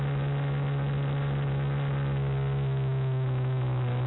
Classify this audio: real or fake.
real